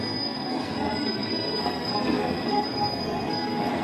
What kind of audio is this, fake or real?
fake